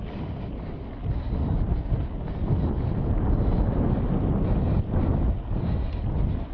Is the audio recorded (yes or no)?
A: yes